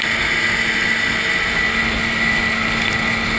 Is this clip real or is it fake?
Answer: real